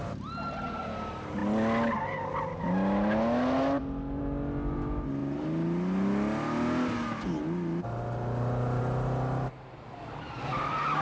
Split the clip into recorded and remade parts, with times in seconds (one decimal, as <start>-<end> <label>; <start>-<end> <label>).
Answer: 0.0-11.0 recorded